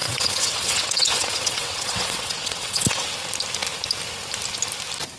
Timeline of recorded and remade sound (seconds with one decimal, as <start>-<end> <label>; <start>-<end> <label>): 0.0-3.1 remade; 3.1-5.2 recorded